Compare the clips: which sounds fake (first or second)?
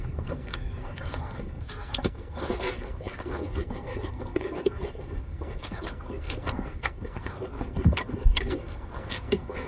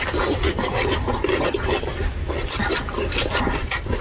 first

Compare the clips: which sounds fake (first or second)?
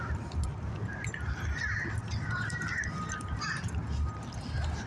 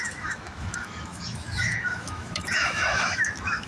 second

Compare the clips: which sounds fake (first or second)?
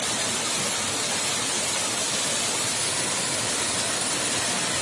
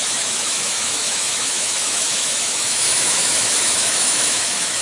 second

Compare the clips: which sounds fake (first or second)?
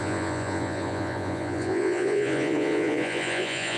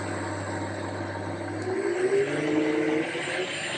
first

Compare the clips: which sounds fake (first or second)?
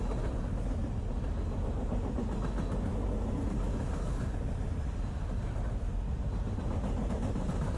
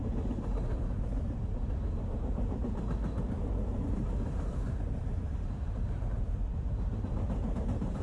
second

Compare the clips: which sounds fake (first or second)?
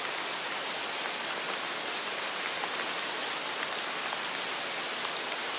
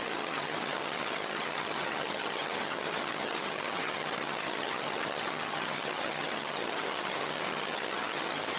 second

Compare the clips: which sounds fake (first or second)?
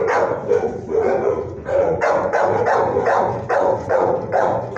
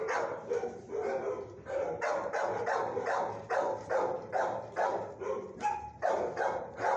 first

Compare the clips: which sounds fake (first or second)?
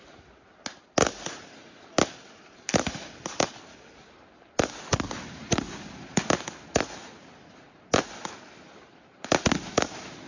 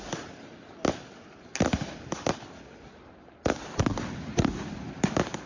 second